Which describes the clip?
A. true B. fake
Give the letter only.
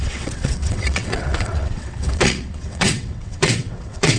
B